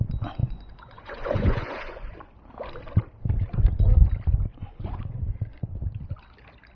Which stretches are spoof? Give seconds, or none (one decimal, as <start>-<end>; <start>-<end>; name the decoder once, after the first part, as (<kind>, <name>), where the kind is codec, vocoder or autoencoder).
0.4-2.3 (vocoder, Vocos); 4.5-5.2

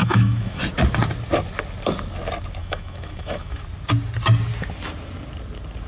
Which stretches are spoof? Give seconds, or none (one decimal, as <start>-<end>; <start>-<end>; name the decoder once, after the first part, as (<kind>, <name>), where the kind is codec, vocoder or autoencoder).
0.0-0.6 (autoencoder, DAC-VAE); 2.6-3.6